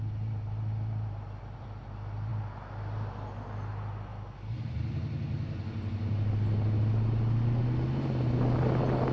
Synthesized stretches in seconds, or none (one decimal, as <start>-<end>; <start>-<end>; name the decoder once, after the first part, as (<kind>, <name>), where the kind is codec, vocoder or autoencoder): none